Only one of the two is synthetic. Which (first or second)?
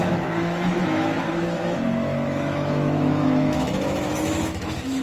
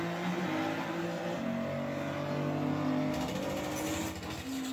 first